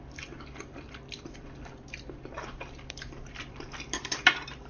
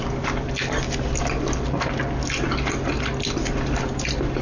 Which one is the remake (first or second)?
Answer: first